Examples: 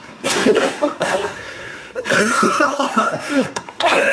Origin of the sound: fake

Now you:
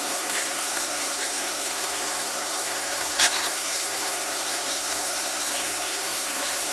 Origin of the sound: fake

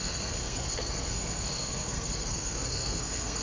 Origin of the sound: fake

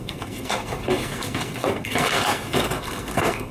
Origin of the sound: fake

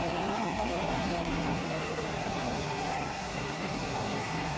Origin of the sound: fake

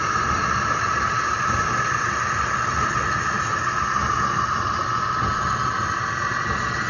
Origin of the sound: real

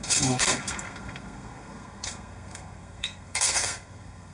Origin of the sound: fake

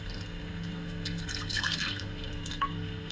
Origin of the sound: fake